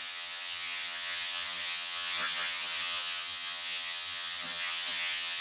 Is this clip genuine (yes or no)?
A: no